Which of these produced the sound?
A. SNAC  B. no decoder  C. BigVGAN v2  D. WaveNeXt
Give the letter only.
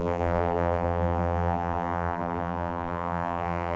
C